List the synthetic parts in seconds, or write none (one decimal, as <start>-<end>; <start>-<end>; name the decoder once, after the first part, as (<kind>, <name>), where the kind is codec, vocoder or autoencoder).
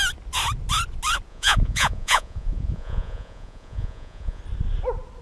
1.3-4.4 (vocoder, Vocos)